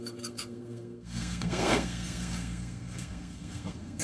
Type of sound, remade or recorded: remade